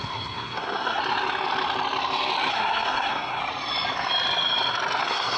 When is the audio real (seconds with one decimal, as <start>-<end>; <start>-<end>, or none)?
1.0-2.5; 3.4-5.0